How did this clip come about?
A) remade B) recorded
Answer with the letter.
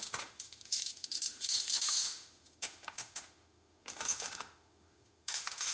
A